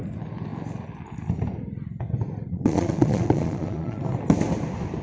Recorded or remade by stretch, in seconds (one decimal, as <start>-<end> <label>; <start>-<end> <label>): 0.0-2.5 recorded; 2.5-4.0 remade; 4.0-5.0 recorded

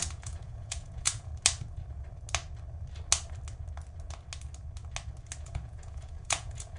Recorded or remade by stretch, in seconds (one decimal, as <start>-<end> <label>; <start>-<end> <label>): 0.0-1.3 remade; 1.3-5.4 recorded; 5.4-6.8 remade

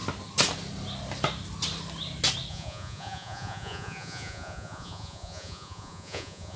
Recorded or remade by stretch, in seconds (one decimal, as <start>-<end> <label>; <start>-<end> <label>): 0.0-2.5 recorded; 2.5-6.6 remade

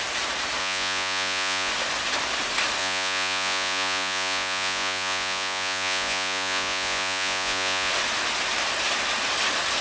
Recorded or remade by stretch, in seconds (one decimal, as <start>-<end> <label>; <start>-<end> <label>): 0.0-0.6 recorded; 0.6-1.7 remade; 1.7-2.8 recorded; 2.8-7.9 remade; 7.9-9.8 recorded

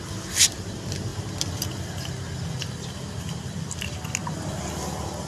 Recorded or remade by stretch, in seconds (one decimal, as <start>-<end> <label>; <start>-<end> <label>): 0.0-5.3 recorded

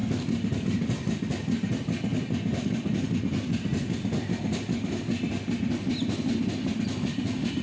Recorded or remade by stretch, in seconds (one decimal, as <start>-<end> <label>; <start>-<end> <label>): 0.0-7.6 recorded

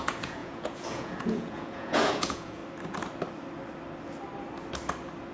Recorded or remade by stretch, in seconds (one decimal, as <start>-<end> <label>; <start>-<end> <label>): 0.0-2.6 remade; 2.6-5.3 recorded

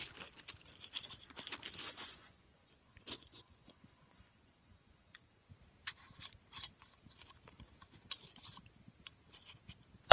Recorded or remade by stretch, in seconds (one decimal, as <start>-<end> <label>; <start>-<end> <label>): 0.0-1.8 recorded; 1.8-5.5 remade; 5.5-10.1 recorded